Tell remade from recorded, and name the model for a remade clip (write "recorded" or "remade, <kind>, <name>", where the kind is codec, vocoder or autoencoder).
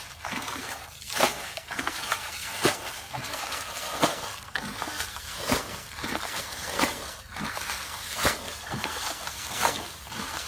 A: remade, codec, SNAC